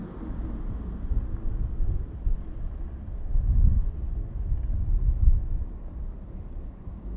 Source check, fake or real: real